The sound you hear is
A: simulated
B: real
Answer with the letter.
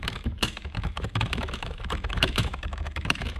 A